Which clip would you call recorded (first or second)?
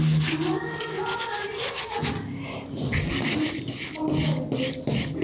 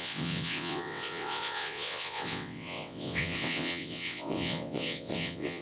first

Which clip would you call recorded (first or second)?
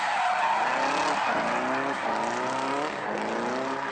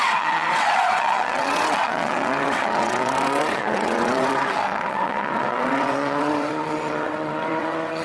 first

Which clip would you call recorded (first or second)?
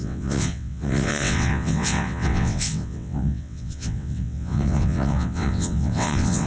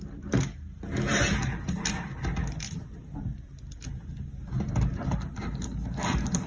second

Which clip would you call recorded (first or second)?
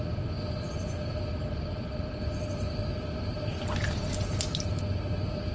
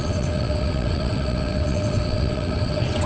first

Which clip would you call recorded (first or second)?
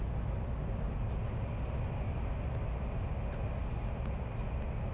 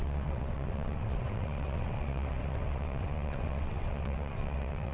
first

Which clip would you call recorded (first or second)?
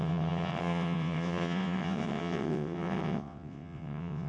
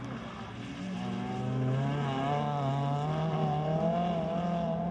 second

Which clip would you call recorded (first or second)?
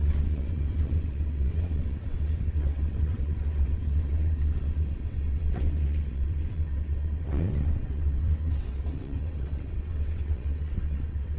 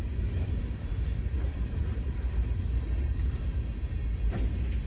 second